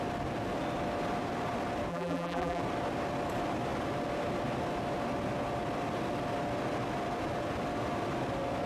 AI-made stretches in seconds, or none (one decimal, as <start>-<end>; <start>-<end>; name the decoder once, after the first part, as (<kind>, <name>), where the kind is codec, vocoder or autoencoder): 1.9-2.6 (vocoder, BigVGAN v2)